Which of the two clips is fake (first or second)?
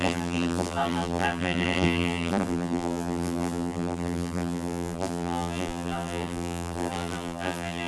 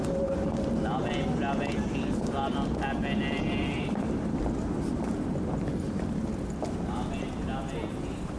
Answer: first